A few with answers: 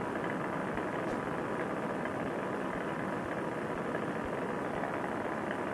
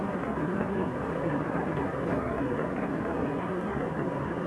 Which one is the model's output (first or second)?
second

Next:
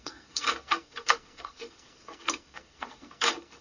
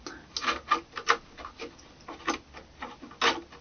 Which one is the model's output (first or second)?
first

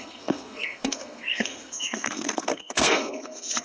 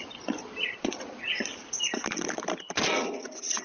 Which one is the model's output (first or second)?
first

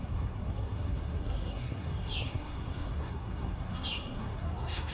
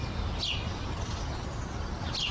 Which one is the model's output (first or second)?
first